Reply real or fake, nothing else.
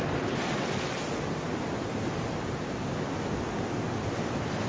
real